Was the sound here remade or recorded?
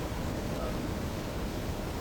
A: remade